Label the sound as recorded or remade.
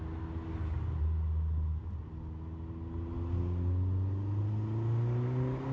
recorded